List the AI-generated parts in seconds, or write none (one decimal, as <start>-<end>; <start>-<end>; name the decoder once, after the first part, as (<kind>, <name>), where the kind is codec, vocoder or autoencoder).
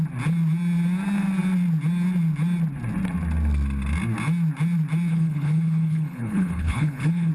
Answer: 5.1-7.3 (codec, HILCodec)